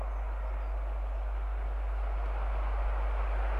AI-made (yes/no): no